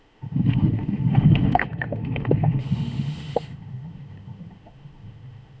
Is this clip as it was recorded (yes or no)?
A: no